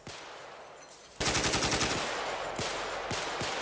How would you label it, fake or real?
real